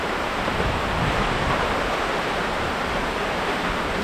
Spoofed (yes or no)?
yes